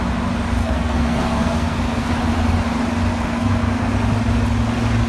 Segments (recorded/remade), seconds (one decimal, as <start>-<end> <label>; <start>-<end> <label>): 0.0-0.6 recorded; 0.6-2.1 remade; 2.1-3.1 recorded; 3.1-3.9 remade; 3.9-5.1 recorded